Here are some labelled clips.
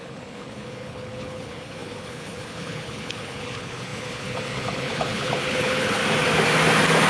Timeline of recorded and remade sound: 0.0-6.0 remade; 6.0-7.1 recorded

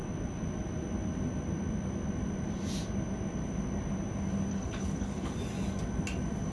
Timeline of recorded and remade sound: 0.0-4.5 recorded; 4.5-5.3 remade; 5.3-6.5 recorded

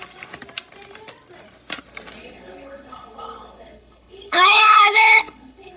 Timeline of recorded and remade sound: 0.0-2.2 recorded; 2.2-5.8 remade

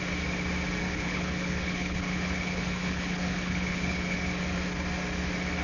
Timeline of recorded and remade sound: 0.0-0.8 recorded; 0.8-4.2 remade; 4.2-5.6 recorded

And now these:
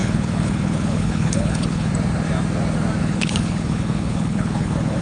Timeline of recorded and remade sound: 0.0-1.9 remade; 1.9-3.0 recorded; 3.0-5.0 remade